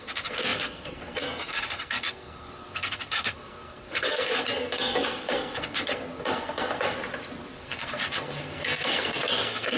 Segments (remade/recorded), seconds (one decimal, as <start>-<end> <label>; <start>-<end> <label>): 0.0-7.0 remade; 7.0-7.6 recorded; 7.6-9.8 remade